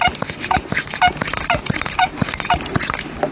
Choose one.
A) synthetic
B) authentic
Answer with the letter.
B